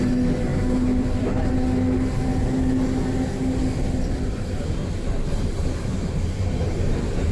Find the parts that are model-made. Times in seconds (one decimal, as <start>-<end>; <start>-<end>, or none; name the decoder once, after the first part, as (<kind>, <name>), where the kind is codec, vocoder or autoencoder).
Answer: 0.5-1.5 (vocoder, BigVGAN v2); 3.8-6.7